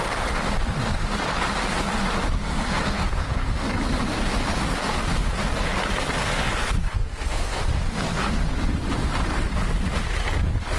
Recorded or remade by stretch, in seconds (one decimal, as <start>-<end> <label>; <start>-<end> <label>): 0.0-2.4 recorded; 2.4-3.1 remade; 3.1-6.8 recorded; 6.8-7.6 remade; 7.6-10.8 recorded